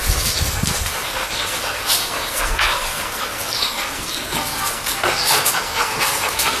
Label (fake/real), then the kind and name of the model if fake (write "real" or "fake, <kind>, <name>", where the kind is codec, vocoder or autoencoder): fake, codec, SNAC